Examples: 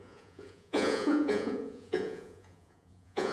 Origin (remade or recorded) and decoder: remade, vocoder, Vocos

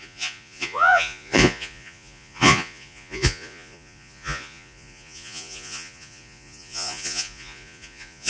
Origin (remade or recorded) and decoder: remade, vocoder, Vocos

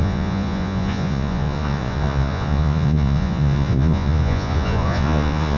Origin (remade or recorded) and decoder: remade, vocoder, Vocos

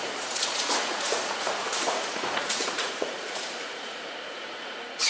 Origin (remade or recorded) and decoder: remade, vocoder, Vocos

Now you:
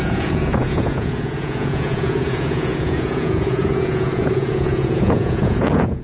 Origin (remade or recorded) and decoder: remade, vocoder, Vocos